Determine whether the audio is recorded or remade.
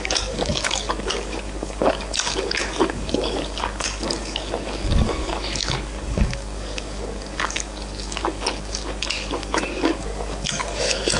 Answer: remade